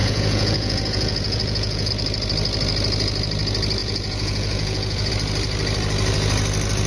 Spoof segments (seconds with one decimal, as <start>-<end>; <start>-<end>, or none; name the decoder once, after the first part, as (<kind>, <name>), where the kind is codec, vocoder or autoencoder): 0.0-1.9 (vocoder, Vocos); 3.8-5.1